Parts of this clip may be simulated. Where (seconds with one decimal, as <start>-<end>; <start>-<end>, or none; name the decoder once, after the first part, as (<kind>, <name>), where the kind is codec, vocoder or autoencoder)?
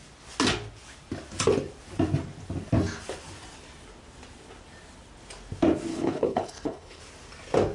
5.9-7.0 (codec, HILCodec)